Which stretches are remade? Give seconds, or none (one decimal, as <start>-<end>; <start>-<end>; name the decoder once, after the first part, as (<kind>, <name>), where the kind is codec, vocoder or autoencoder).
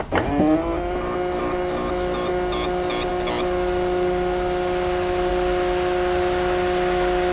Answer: none